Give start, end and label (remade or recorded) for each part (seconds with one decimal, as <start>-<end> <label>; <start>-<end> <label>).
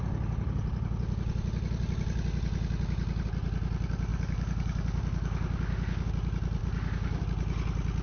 0.0-4.1 recorded; 4.1-6.1 remade; 6.1-6.6 recorded; 6.6-7.2 remade; 7.2-8.0 recorded